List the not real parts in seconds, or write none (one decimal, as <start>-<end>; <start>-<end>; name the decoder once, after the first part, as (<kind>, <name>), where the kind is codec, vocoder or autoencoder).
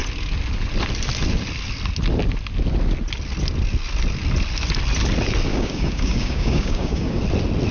5.5-7.2 (codec, DAC)